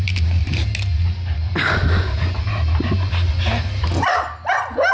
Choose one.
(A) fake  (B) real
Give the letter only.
B